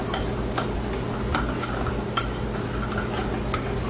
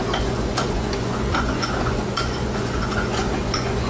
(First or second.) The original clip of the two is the first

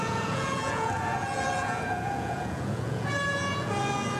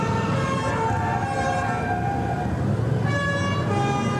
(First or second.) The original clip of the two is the second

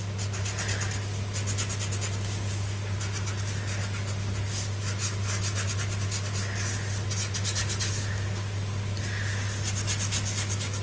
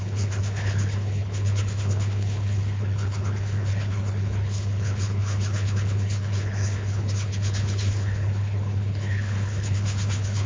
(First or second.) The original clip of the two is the first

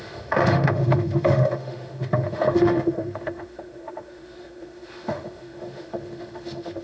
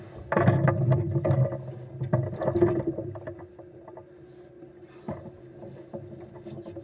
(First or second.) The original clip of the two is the second